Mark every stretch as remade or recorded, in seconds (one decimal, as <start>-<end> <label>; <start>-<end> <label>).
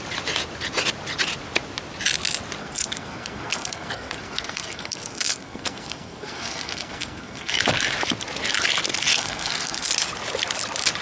0.0-2.6 recorded; 2.6-7.6 remade; 7.6-9.1 recorded; 9.1-9.9 remade; 9.9-11.0 recorded